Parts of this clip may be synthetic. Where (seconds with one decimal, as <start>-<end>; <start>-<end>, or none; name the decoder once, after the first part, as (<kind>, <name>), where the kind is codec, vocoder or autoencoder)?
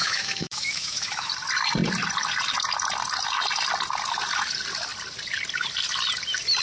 0.0-1.3 (autoencoder, DAC-VAE)